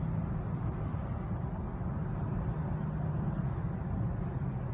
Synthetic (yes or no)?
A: no